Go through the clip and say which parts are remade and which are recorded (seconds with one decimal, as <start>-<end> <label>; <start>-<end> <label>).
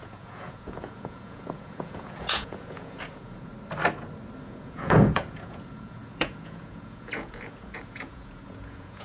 0.0-3.5 remade; 3.5-4.4 recorded; 4.4-9.0 remade